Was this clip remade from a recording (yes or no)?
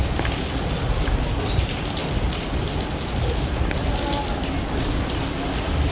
no